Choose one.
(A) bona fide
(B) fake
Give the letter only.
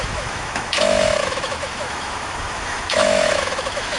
B